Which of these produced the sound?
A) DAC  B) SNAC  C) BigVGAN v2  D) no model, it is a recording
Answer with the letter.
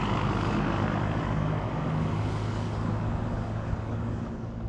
A